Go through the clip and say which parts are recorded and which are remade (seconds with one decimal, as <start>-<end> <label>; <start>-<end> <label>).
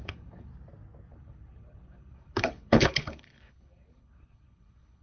0.0-0.5 remade; 0.5-1.1 recorded; 1.1-5.0 remade